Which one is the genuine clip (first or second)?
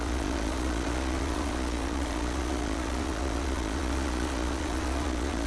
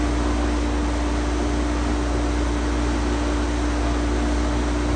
second